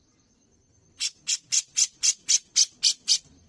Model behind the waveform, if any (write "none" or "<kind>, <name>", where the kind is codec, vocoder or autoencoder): none